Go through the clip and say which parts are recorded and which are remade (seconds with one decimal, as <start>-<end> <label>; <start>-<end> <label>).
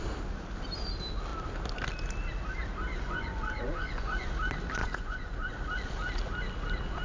0.0-2.9 recorded; 2.9-4.3 remade; 4.3-4.8 recorded; 4.8-5.5 remade; 5.5-7.0 recorded